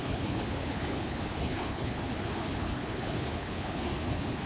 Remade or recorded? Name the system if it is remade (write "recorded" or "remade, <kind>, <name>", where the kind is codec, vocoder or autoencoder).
remade, codec, HILCodec